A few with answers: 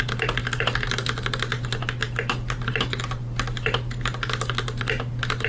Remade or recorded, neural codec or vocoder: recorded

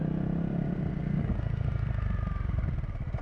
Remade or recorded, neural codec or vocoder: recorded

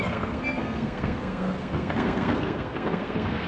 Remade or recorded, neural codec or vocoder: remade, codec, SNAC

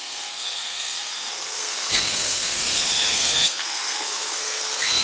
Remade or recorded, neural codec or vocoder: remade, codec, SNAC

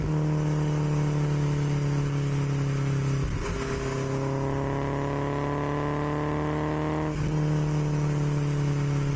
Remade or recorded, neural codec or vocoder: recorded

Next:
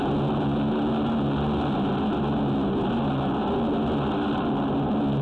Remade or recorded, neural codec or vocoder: recorded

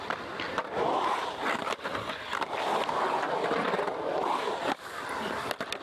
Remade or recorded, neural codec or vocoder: recorded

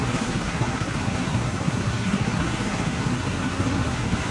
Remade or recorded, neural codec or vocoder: remade, codec, SNAC